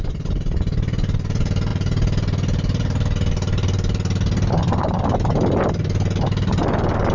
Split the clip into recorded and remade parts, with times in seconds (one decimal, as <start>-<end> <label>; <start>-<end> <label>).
0.0-7.1 recorded